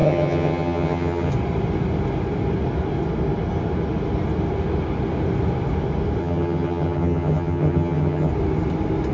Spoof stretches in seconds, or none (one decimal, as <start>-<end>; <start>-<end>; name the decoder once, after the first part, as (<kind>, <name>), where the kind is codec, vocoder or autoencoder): 0.0-1.3 (vocoder, HiFi-GAN); 6.2-8.3